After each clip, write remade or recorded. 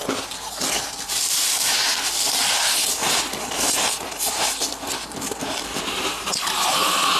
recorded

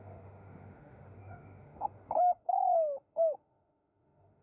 remade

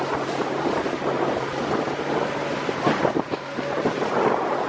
recorded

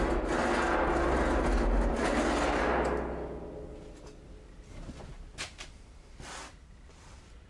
recorded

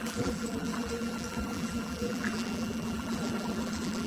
remade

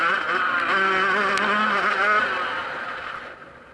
recorded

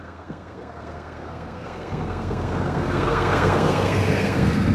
remade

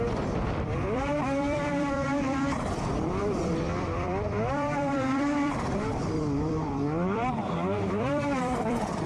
remade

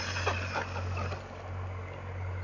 recorded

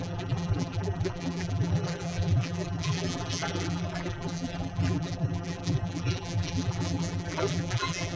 remade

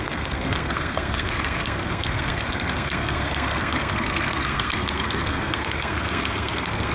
remade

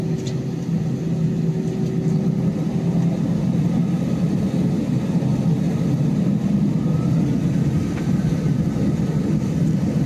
recorded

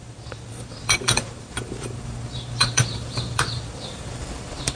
remade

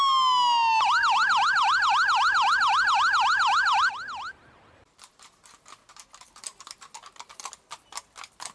recorded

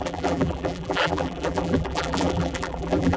remade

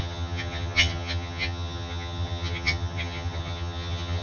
remade